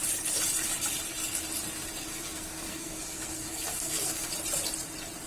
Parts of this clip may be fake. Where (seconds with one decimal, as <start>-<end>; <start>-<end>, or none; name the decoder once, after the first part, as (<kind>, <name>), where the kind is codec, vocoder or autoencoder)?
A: 2.1-4.3 (codec, SNAC)